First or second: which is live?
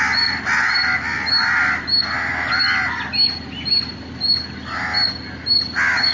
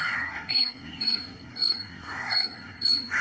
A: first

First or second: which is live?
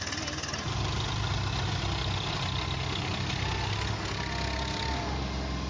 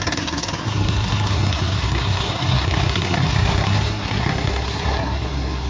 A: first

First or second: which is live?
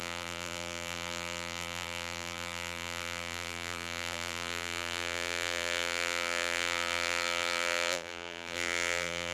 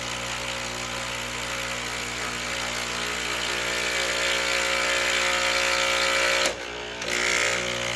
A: second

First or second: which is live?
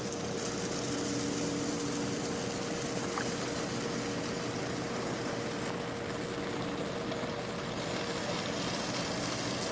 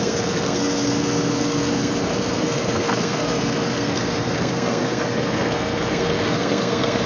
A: first